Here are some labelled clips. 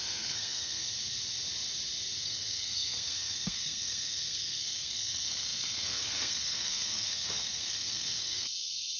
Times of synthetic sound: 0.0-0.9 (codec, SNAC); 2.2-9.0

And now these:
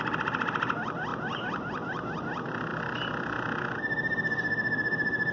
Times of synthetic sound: none

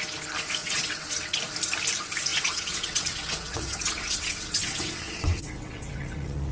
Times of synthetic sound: 0.6-1.4 (vocoder, WaveNeXt); 2.3-6.5

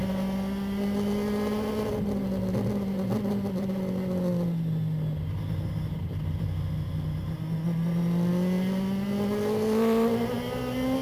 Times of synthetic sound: none

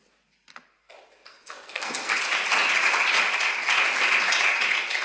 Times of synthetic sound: 1.3-2.2 (codec, SNAC)

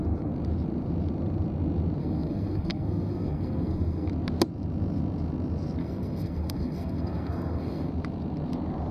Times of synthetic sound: 2.0-4.1 (codec, SNAC); 5.8-7.9

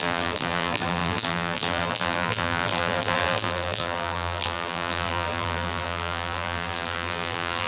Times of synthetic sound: 0.0-7.7 (vocoder, BigVGAN v2)

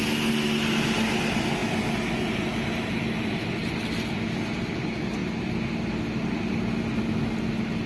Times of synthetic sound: none